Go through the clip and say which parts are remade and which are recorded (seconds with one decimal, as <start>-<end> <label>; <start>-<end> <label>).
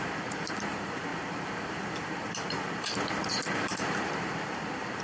0.0-5.0 remade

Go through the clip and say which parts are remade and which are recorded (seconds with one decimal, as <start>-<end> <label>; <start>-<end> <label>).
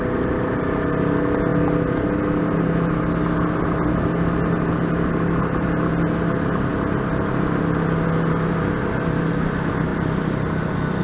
0.0-11.0 recorded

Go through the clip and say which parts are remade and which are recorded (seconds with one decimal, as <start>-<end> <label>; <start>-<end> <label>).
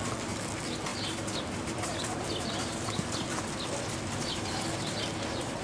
0.0-5.6 remade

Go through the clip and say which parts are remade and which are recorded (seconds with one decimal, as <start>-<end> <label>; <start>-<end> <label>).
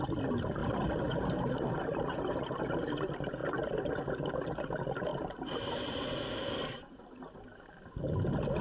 0.0-0.6 recorded; 0.6-2.6 remade; 2.6-5.1 recorded; 5.1-7.7 remade; 7.7-8.6 recorded